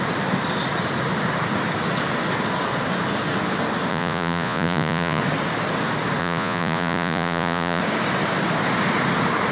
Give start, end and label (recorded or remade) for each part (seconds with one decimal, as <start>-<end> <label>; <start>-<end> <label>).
0.0-3.9 recorded; 3.9-5.2 remade; 5.2-6.2 recorded; 6.2-7.8 remade; 7.8-9.5 recorded